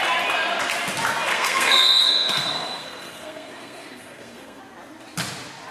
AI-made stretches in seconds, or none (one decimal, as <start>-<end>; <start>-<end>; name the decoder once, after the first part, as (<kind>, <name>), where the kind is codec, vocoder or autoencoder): 1.3-4.6 (codec, SNAC)